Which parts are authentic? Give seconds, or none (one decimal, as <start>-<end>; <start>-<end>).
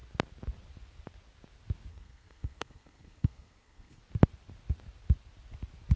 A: 0.0-1.9; 4.0-6.0